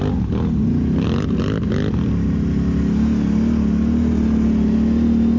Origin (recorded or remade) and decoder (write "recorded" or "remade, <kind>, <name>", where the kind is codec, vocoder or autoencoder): recorded